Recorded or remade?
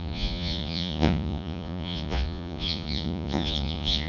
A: remade